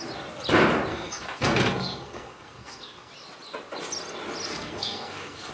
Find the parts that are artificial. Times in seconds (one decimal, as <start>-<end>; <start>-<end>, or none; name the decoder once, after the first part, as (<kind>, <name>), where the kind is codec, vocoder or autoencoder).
0.9-3.1 (codec, SNAC); 4.5-5.5